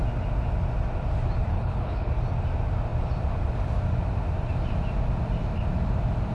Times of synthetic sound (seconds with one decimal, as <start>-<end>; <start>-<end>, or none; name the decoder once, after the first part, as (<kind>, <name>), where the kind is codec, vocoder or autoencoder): 1.5-2.1 (codec, HILCodec)